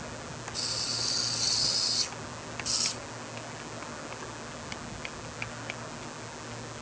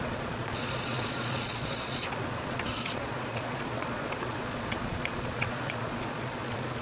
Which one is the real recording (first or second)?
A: first